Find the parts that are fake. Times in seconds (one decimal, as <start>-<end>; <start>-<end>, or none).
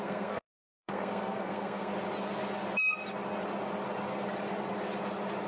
0.0-1.9